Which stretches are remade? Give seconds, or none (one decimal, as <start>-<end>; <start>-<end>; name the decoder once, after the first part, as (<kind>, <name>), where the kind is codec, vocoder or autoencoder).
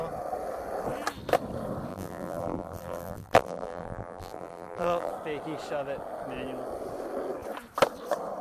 1.9-5.1 (vocoder, BigVGAN v2)